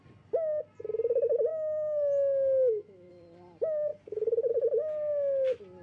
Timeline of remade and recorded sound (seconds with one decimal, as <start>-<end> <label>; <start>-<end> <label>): 0.0-1.5 recorded; 1.5-3.1 remade; 3.1-5.8 recorded